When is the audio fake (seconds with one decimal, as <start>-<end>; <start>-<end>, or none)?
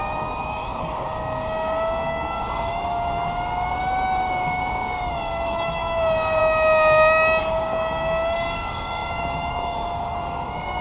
0.0-6.4; 7.4-10.8